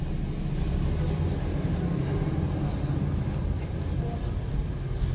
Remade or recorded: recorded